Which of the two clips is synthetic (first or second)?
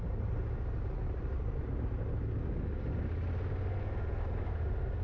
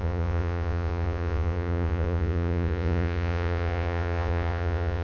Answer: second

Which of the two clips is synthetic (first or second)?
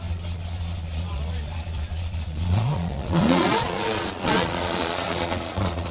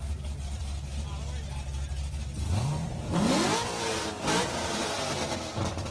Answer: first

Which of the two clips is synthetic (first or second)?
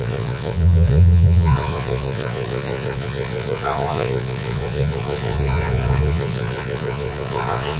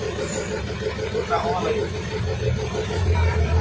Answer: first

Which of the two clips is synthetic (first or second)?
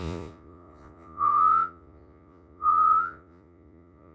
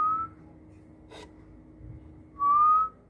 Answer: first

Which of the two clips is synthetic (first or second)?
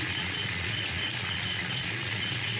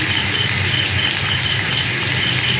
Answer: first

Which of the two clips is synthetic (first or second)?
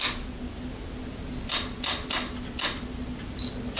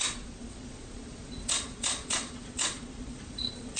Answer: second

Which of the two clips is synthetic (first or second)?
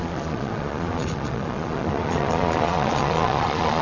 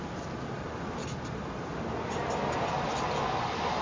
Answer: first